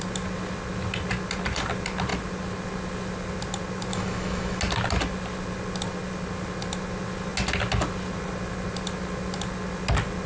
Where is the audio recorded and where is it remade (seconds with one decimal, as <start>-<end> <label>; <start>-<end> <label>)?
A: 0.0-3.9 recorded; 3.9-4.6 remade; 4.6-10.3 recorded